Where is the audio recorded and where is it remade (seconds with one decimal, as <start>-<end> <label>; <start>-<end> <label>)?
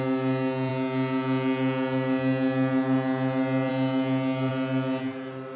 0.0-5.6 recorded